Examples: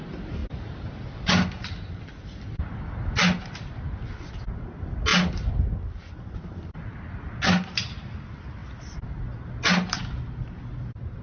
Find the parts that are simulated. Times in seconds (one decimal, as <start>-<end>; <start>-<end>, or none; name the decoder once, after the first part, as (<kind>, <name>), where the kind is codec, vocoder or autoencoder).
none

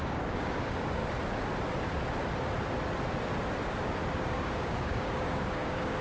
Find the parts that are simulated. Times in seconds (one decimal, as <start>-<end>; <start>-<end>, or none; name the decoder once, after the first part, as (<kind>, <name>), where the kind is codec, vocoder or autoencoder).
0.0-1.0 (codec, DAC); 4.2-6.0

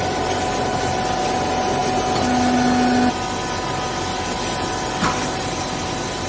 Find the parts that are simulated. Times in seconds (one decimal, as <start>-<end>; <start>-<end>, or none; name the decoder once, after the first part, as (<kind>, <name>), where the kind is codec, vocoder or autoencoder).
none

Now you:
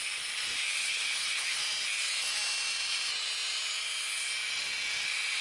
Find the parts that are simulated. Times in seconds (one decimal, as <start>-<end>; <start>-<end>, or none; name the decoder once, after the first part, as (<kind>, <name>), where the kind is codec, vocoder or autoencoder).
0.8-1.6 (codec, HILCodec)

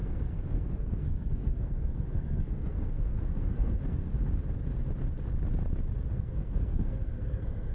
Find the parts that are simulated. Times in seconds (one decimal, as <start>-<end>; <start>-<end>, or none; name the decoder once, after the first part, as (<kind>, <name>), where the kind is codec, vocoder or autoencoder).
0.0-4.1 (codec, SNAC); 6.1-7.7